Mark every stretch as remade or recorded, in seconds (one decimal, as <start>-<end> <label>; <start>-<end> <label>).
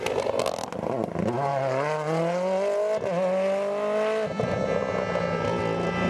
0.0-6.1 recorded